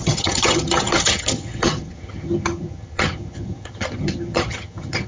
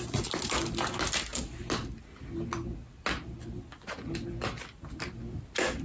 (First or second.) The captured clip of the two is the second